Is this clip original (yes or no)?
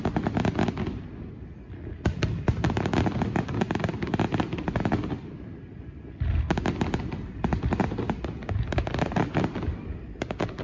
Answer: yes